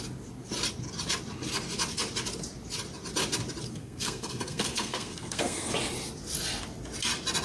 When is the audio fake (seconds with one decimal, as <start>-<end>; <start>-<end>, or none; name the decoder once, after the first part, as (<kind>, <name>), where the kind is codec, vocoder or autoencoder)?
3.8-5.7 (codec, SNAC)